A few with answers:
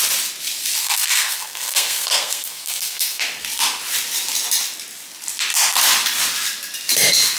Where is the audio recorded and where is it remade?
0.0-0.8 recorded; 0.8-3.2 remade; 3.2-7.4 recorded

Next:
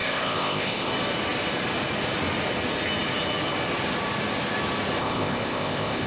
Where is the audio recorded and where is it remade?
0.0-0.9 remade; 0.9-5.0 recorded; 5.0-6.1 remade

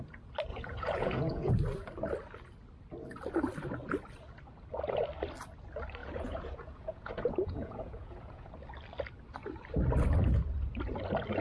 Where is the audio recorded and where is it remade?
0.0-0.5 recorded; 0.5-1.5 remade; 1.5-6.0 recorded; 6.0-8.5 remade; 8.5-11.4 recorded

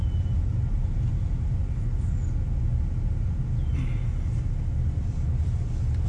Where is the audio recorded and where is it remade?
0.0-6.1 recorded

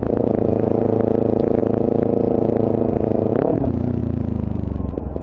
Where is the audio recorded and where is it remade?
0.0-4.0 recorded; 4.0-5.2 remade

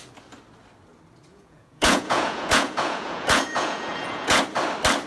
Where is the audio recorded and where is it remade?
0.0-1.3 recorded; 1.3-4.4 remade; 4.4-5.1 recorded

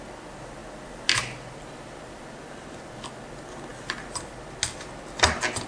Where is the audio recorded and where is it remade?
0.0-5.7 recorded

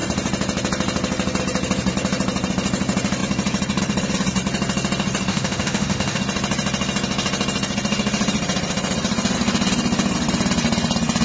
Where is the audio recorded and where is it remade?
0.0-5.3 recorded; 5.3-6.2 remade; 6.2-11.2 recorded